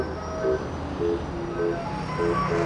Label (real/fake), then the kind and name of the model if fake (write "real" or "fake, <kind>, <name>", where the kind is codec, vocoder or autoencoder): real